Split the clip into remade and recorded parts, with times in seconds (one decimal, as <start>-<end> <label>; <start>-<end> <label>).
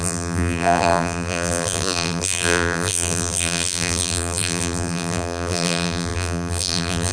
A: 0.0-7.1 remade